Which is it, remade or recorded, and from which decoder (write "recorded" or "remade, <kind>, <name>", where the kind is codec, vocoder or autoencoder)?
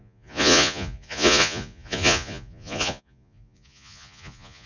remade, vocoder, Vocos